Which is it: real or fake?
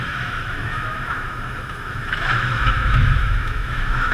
fake